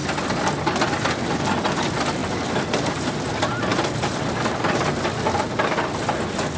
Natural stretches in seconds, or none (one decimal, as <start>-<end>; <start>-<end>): 0.0-2.2; 3.3-6.6